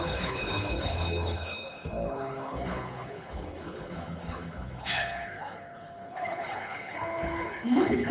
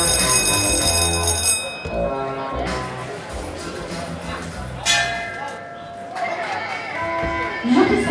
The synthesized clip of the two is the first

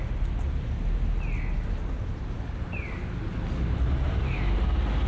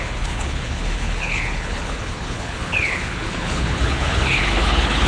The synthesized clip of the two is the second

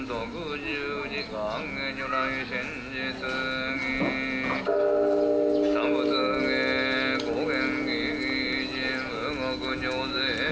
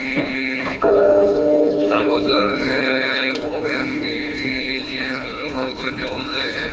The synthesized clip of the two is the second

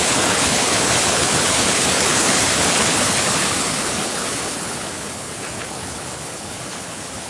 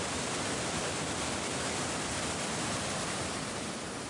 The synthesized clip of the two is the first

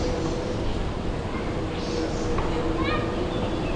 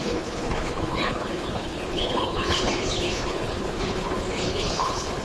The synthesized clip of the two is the second